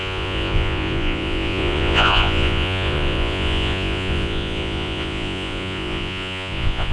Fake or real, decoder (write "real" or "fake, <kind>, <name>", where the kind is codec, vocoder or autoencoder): fake, vocoder, Vocos